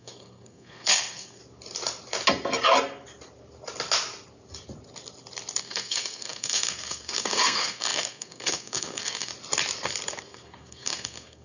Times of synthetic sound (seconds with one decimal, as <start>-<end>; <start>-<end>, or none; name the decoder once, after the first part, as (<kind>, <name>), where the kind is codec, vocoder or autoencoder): 0.0-1.4 (codec, SNAC); 5.6-9.3; 10.2-11.4